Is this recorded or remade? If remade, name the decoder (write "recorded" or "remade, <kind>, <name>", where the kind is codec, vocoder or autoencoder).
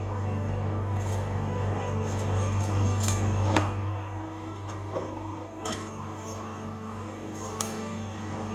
remade, codec, DAC